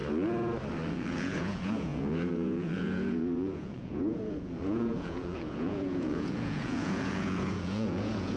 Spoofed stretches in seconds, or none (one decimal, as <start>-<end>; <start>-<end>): 0.9-8.4